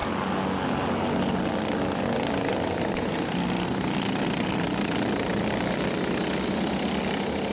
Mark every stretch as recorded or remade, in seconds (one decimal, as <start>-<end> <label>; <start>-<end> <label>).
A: 0.0-7.5 recorded